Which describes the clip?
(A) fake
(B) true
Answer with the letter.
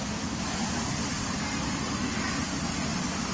B